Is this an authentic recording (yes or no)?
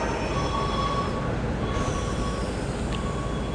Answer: yes